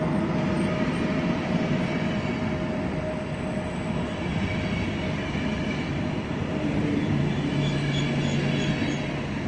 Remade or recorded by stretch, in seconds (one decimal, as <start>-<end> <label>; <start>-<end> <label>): 0.0-5.2 recorded; 5.2-7.5 remade; 7.5-9.5 recorded